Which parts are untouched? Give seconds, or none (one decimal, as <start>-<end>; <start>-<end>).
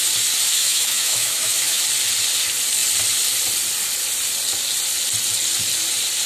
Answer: 0.0-0.5; 1.8-6.3